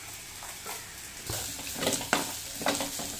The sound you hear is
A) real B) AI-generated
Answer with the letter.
A